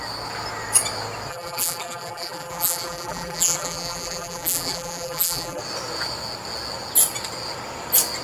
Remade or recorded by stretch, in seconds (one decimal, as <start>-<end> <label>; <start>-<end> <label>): 0.0-1.3 recorded; 1.3-5.6 remade; 5.6-8.2 recorded